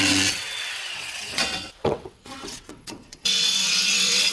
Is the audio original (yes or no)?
no